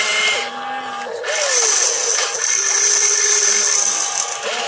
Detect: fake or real real